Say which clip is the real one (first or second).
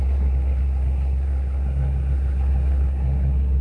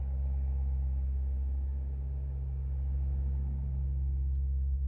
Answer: second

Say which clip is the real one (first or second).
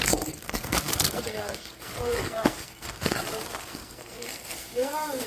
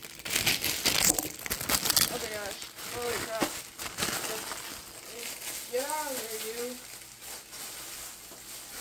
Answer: second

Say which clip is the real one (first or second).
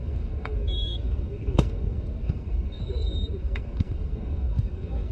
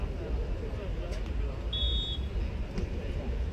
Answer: second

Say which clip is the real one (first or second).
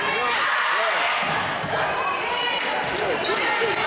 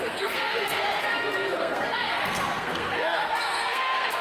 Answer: first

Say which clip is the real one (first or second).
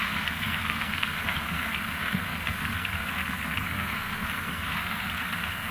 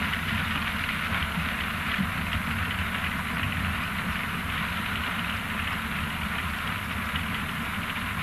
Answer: second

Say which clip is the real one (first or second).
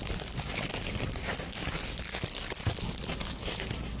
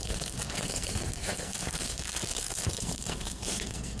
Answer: first